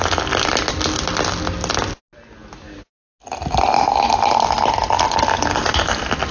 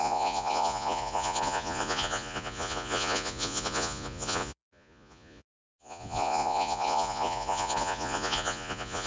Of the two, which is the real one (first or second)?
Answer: first